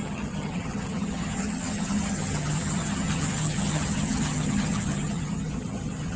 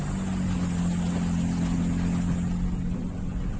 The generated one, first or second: first